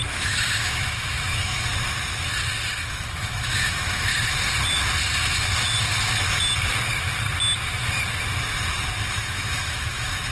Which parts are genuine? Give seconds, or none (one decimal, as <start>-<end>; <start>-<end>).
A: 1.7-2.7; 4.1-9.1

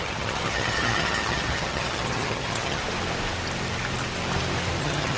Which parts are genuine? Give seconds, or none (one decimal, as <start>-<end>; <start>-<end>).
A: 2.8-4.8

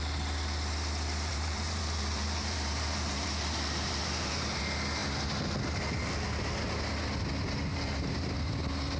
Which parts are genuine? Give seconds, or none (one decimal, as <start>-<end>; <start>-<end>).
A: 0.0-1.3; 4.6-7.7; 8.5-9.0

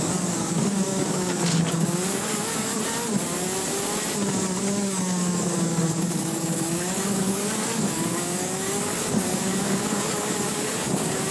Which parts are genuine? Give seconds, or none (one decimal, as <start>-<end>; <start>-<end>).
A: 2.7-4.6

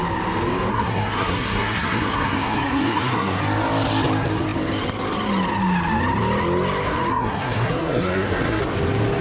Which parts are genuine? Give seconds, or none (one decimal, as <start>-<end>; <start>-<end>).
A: 0.0-0.7; 3.4-7.1; 8.6-9.2